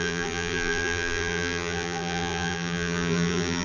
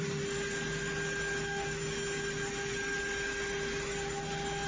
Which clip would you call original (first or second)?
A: second